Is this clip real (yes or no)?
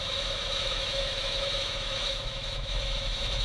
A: no